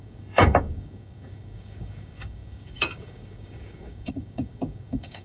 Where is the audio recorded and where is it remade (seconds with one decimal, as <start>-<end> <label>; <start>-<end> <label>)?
0.0-5.2 remade